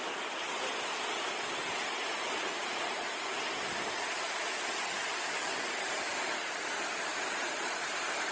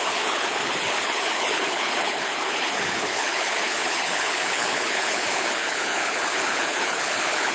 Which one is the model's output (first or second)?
second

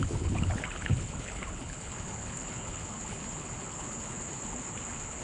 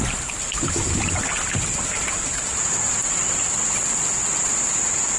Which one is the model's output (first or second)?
first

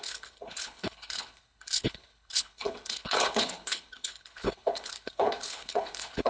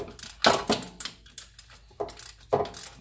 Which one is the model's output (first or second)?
first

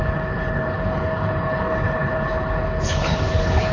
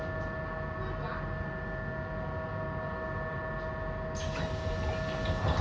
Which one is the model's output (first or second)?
first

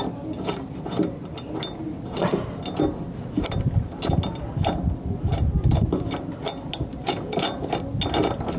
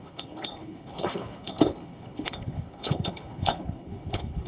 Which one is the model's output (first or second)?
second